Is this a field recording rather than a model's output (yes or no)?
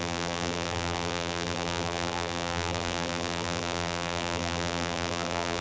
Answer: no